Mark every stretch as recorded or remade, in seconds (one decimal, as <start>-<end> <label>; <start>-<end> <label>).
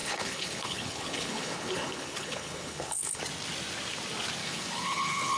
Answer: 0.0-3.2 remade; 3.2-4.4 recorded; 4.4-5.4 remade